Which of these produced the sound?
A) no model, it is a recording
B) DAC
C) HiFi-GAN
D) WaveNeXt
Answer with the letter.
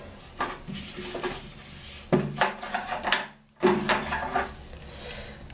A